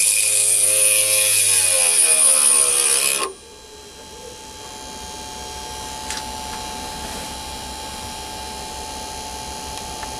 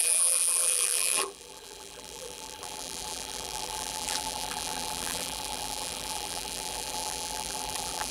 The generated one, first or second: second